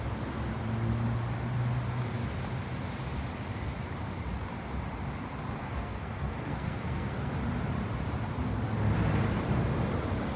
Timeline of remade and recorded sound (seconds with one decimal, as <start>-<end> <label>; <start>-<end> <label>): 0.0-5.6 recorded; 5.6-7.3 remade; 7.3-10.4 recorded